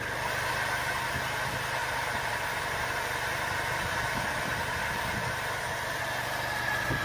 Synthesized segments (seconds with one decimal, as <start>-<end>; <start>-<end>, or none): 1.8-6.0